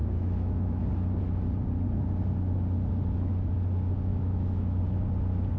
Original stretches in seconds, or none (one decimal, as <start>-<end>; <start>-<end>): 0.8-4.1; 4.8-5.6